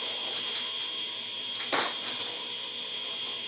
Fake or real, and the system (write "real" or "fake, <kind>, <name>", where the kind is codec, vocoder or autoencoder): real